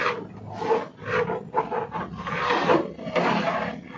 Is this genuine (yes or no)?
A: yes